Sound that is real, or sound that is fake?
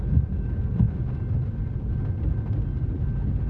real